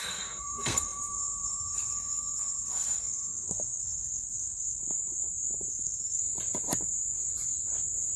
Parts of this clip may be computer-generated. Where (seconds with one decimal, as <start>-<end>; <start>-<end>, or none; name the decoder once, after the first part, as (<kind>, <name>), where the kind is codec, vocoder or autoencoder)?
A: 0.0-4.8 (codec, SNAC); 5.7-6.2

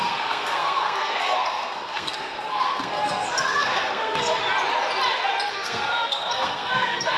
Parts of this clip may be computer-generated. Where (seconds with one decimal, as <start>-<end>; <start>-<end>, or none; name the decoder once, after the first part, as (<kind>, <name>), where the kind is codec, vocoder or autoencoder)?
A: 0.0-4.4 (codec, SNAC); 5.5-7.2

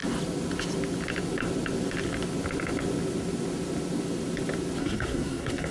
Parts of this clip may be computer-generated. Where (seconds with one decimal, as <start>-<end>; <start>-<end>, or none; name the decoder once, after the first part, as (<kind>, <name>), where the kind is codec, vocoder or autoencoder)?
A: 4.8-5.7 (codec, SNAC)

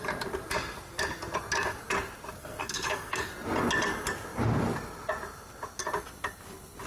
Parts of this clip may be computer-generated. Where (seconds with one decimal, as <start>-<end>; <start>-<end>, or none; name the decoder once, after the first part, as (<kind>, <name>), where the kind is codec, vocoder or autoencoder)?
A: 2.4-3.3 (codec, SNAC)

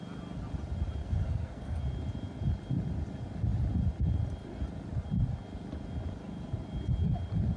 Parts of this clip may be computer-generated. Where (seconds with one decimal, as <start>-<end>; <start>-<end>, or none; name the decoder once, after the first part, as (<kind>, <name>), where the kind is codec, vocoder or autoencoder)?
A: 1.0-1.8 (codec, SNAC)

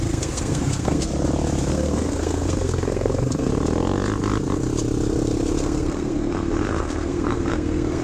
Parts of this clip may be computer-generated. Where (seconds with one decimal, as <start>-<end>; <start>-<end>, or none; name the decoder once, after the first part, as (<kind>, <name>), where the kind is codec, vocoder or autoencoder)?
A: 0.0-1.1 (codec, SNAC); 1.7-3.5; 5.6-8.0